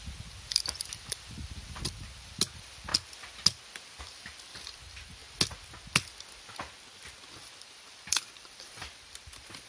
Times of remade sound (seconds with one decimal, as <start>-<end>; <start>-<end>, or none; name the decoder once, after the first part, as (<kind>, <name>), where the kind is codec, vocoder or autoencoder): 0.0-2.9 (vocoder, BigVGAN v2); 4.0-5.2; 7.5-9.7